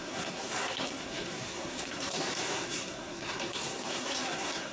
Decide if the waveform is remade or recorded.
remade